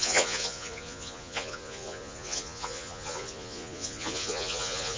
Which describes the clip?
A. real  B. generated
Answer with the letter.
B